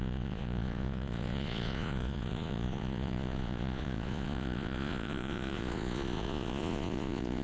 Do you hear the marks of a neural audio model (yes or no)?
yes